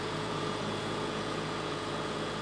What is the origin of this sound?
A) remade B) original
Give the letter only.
A